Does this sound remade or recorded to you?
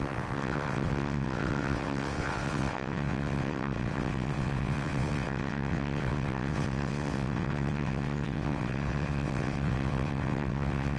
remade